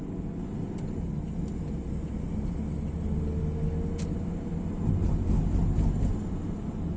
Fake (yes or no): no